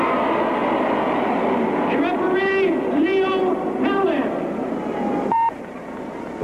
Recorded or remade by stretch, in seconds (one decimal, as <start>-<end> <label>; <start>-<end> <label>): 0.0-6.4 recorded